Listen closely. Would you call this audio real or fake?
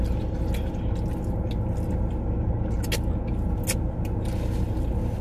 real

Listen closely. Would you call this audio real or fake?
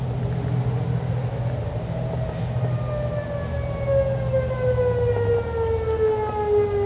real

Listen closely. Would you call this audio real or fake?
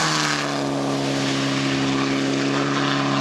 real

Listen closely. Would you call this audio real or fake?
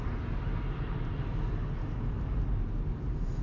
real